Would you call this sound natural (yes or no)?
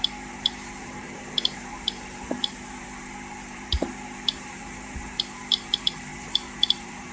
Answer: no